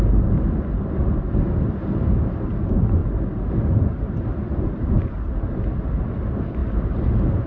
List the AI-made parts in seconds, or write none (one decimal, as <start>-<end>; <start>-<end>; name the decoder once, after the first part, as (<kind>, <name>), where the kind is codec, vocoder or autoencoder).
3.0-5.3 (vocoder, BigVGAN v2)